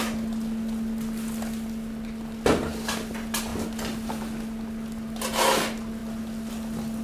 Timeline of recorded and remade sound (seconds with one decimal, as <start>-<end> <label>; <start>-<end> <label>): 0.0-7.0 recorded